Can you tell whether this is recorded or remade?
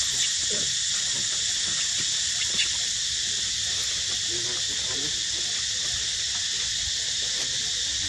recorded